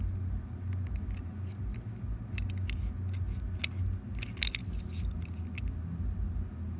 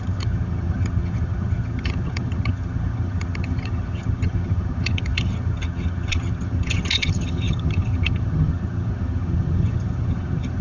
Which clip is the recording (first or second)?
first